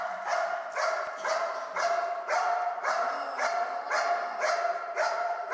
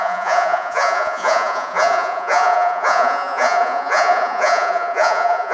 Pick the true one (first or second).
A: first